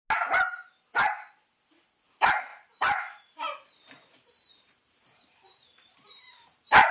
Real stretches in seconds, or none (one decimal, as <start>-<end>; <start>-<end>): 0.0-2.5